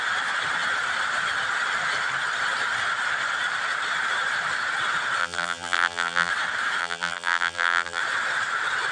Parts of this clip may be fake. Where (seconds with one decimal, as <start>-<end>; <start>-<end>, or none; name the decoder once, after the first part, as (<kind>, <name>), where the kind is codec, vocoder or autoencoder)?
5.2-6.3 (vocoder, BigVGAN v2); 6.8-8.0

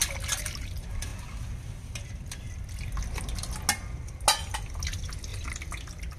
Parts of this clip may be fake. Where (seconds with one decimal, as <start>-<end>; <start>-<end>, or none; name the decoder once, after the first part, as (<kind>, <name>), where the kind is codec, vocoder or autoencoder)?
5.3-6.2 (vocoder, BigVGAN v2)

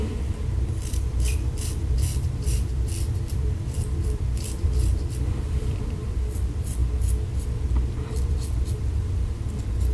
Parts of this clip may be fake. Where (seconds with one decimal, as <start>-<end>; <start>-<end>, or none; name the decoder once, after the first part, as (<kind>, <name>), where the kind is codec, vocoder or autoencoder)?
0.0-6.8 (vocoder, BigVGAN v2); 8.1-9.9

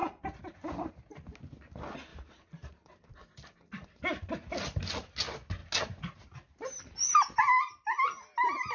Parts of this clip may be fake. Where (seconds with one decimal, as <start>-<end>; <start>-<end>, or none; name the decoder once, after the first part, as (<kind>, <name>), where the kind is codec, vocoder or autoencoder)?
0.0-0.9 (vocoder, BigVGAN v2); 2.1-4.2